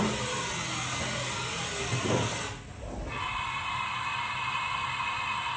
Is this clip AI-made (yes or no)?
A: no